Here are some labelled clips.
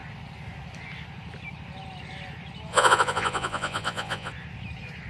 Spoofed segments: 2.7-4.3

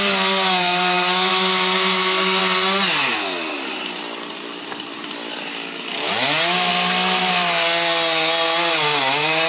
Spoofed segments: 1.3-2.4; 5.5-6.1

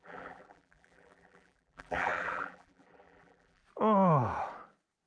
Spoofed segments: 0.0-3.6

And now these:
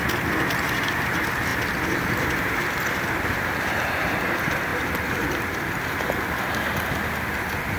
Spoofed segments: none

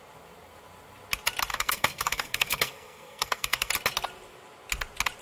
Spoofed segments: 1.5-3.7

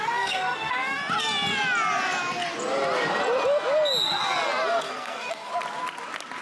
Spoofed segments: 0.0-1.0; 4.8-5.5